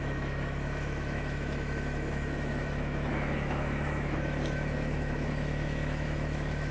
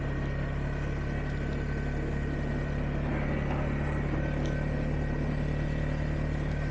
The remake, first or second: first